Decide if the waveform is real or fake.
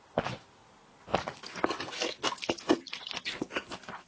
real